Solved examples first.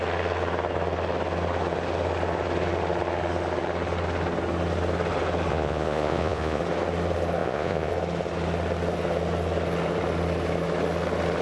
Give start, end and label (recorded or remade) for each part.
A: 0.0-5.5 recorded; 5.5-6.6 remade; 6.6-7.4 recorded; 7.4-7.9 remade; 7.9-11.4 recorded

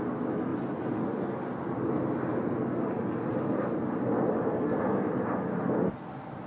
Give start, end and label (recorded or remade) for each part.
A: 0.0-6.5 recorded

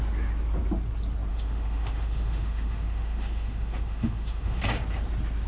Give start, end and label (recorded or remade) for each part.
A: 0.0-1.3 recorded; 1.3-4.6 remade; 4.6-5.5 recorded

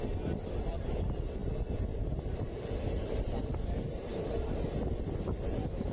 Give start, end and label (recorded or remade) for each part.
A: 0.0-5.9 recorded